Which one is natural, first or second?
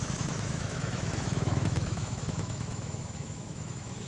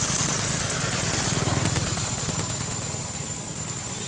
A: second